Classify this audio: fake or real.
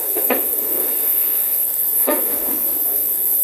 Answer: fake